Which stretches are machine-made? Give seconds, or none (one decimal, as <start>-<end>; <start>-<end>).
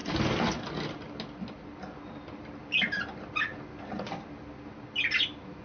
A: none